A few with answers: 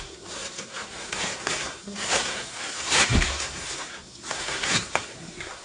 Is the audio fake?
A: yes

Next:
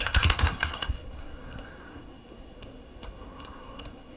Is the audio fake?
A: yes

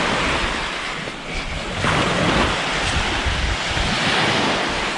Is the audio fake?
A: no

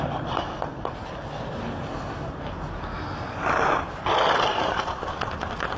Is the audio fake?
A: no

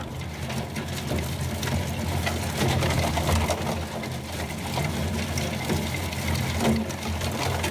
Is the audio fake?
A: no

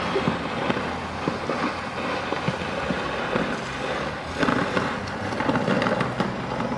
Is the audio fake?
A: no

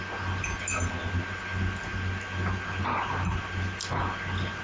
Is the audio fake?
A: no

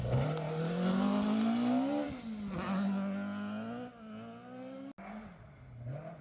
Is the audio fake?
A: no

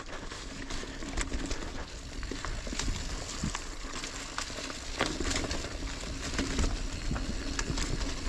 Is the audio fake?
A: no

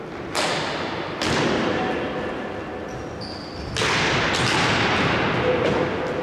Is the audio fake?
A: no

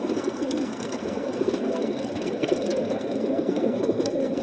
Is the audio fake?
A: yes